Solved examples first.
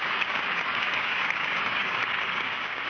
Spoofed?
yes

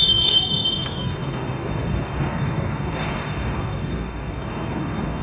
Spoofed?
yes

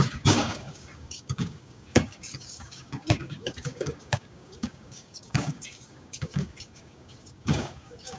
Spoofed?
yes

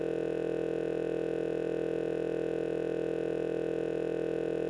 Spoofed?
no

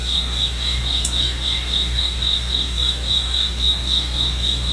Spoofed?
yes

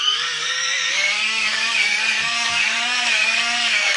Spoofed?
yes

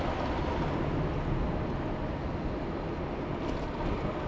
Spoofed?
no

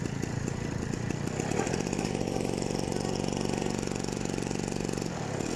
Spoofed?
no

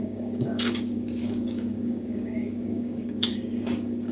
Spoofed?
yes